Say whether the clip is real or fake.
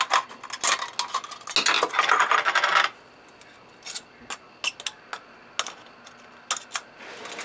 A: real